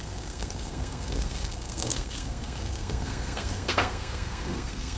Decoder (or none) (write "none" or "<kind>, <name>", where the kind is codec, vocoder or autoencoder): codec, SNAC